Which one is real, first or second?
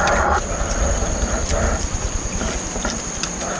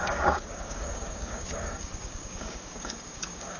first